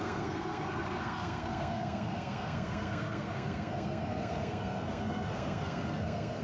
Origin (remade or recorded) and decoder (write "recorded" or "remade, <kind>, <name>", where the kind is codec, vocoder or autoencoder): remade, codec, SNAC